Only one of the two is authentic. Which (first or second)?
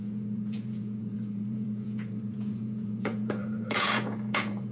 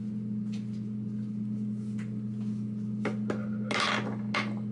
second